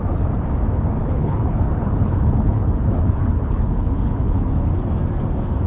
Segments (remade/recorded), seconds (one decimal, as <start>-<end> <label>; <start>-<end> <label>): 0.0-1.0 recorded; 1.0-4.4 remade; 4.4-5.7 recorded